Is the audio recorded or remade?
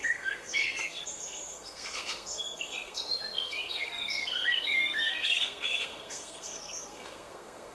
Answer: remade